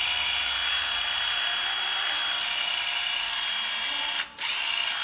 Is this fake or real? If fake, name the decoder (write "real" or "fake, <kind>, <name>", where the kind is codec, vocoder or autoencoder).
real